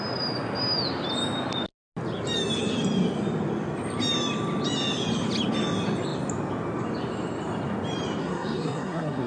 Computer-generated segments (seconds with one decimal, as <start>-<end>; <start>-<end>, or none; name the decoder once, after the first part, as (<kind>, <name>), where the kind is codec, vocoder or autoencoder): 8.2-9.3 (codec, SNAC)